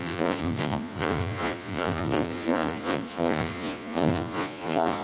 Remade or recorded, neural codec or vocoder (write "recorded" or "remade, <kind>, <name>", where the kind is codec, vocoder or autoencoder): remade, vocoder, Vocos